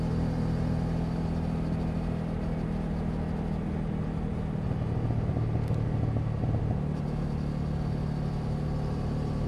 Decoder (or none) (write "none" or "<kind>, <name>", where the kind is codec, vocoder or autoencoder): none